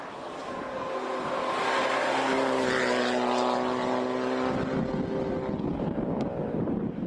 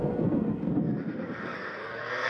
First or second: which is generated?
second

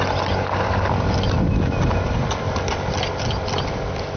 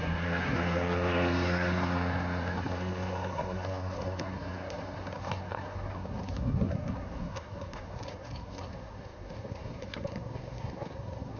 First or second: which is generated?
second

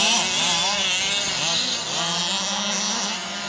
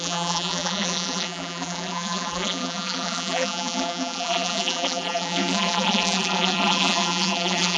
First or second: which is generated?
second